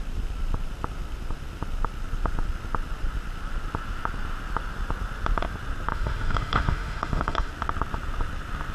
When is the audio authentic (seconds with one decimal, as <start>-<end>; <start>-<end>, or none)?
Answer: 0.0-5.9; 7.5-8.7